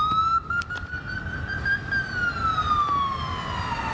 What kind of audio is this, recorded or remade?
recorded